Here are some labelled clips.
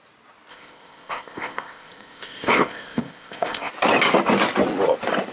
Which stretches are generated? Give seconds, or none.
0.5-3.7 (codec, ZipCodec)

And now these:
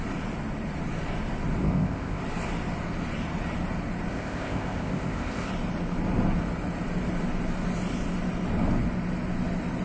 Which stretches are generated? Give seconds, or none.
1.6-2.2 (codec, ZipCodec); 4.1-5.5

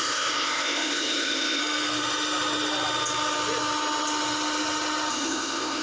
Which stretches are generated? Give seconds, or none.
0.0-1.6 (codec, ZipCodec); 5.1-5.8

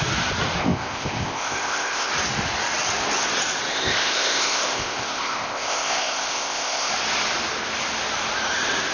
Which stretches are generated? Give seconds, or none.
0.6-2.1 (codec, ZipCodec); 3.7-6.9

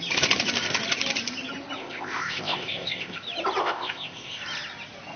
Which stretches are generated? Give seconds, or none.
1.8-3.2 (codec, ZipCodec); 3.6-4.4

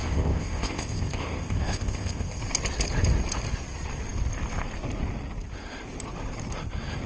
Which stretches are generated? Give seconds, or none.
0.0-2.4 (codec, ZipCodec)

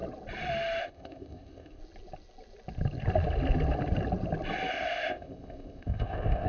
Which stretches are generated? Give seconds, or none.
0.8-1.8 (codec, ZipCodec); 4.7-6.5